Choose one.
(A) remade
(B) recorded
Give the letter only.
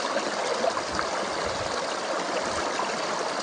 B